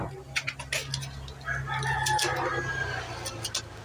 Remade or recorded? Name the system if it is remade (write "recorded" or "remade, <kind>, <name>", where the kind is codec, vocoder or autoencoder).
recorded